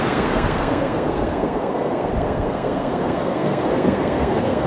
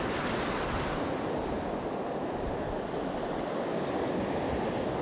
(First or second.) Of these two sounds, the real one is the second